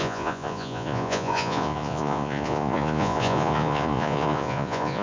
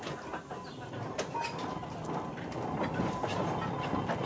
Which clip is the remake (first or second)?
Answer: first